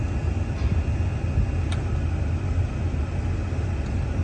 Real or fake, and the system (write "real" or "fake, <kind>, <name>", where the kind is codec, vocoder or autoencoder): real